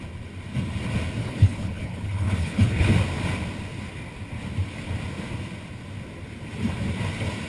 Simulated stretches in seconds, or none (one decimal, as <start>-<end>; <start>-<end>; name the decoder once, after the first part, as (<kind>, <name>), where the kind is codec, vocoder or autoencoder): 1.2-2.9 (codec, HILCodec)